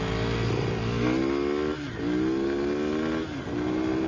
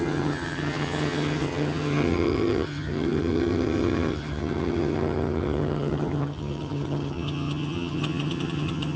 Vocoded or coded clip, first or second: second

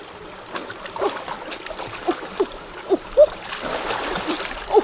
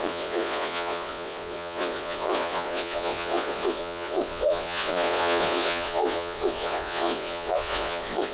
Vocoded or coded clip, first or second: second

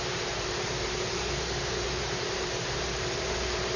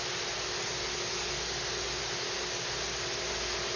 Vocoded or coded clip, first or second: first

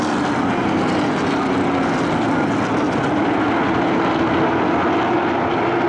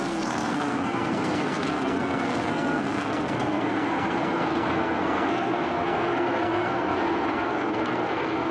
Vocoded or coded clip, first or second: second